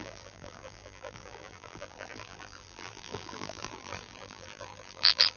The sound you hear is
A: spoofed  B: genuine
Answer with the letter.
A